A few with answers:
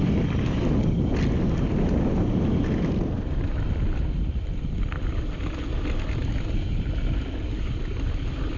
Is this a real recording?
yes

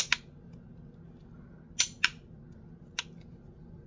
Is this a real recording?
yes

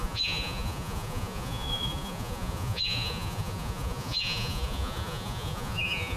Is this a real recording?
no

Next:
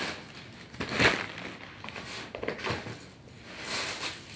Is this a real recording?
yes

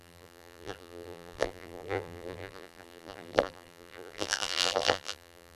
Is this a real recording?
no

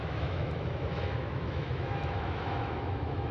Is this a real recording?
no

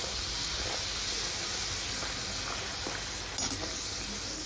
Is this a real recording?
yes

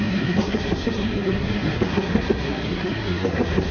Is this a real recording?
no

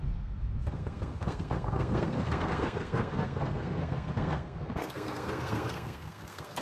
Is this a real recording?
no